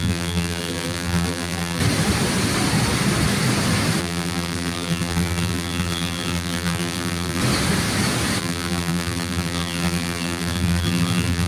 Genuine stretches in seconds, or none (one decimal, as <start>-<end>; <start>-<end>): 1.8-4.0; 7.4-8.4